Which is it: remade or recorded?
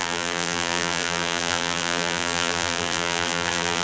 remade